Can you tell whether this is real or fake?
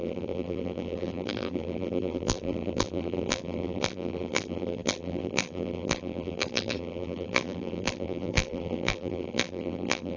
fake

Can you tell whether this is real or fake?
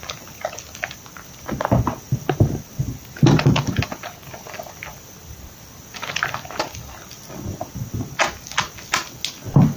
real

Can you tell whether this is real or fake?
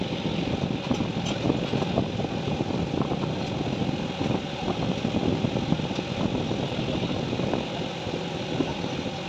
real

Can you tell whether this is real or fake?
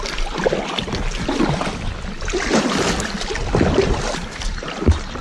real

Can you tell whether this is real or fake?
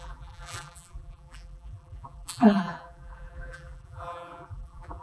fake